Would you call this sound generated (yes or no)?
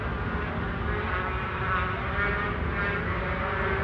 no